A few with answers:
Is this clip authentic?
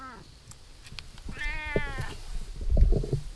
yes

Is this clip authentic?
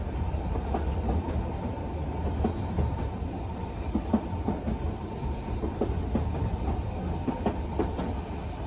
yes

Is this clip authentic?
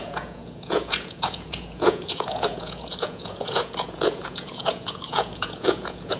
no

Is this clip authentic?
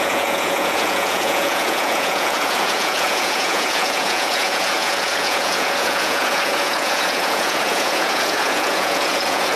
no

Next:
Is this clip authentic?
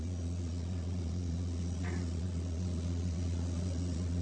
no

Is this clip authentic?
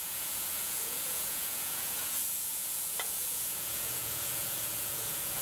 no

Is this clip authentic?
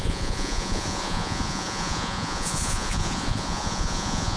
no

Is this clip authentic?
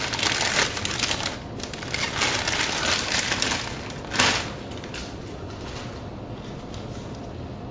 yes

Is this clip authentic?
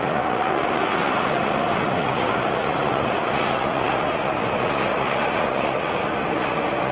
no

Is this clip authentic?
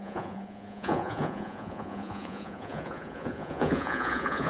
no